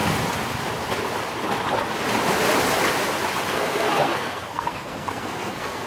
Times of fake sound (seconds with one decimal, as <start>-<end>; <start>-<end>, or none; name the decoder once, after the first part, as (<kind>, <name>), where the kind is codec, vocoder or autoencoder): 3.5-5.9 (codec, SNAC)